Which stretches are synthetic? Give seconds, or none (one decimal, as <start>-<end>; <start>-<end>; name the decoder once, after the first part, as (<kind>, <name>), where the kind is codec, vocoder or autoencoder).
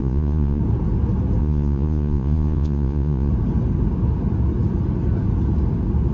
0.0-0.6 (vocoder, Vocos); 1.4-3.3